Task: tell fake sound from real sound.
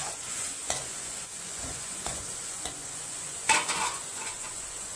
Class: fake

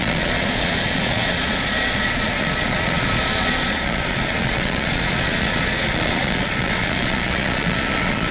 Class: fake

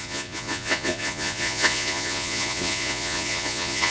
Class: fake